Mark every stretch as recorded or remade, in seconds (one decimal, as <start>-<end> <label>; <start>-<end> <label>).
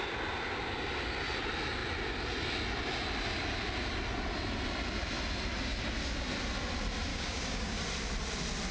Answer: 0.0-7.1 recorded; 7.1-7.8 remade; 7.8-8.7 recorded